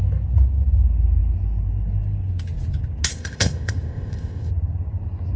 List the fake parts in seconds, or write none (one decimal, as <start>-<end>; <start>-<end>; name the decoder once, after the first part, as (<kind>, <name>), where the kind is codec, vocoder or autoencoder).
3.1-4.5 (codec, ZipCodec)